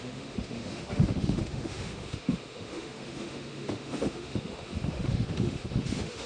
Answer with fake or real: fake